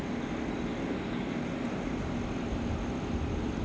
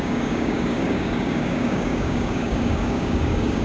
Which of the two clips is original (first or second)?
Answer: first